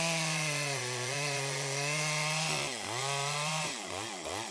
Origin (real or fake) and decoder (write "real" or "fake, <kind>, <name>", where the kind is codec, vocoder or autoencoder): fake, vocoder, Vocos